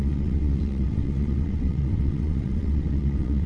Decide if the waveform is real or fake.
fake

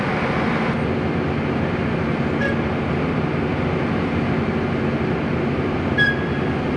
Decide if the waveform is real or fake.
real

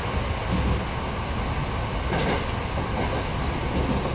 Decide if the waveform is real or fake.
real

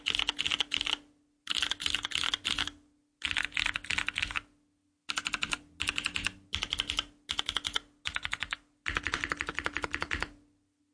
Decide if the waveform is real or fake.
real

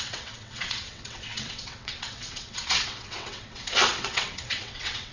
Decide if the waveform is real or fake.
fake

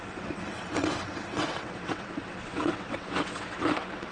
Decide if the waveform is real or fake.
fake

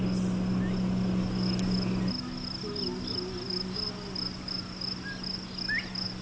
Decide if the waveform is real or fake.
real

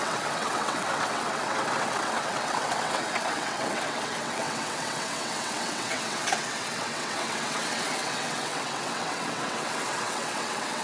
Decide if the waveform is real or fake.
fake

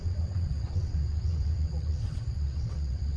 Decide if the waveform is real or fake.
fake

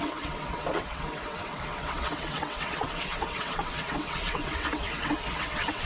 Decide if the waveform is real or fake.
fake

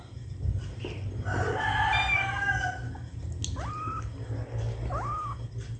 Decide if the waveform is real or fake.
real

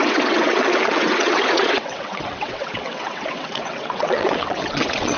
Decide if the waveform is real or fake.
fake